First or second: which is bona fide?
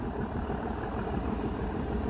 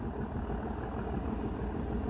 second